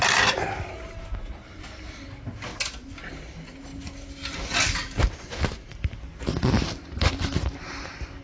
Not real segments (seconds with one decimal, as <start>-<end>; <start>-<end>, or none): none